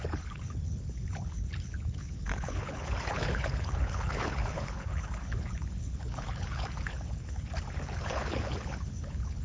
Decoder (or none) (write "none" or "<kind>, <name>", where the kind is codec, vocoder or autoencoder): codec, HILCodec